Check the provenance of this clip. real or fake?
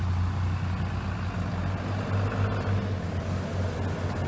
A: real